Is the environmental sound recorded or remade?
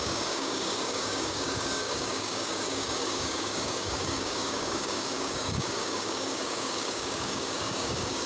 remade